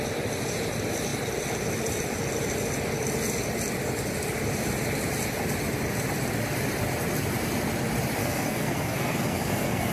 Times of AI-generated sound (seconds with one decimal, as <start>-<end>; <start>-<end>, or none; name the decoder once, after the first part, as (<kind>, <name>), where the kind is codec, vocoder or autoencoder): 8.2-9.9 (codec, SNAC)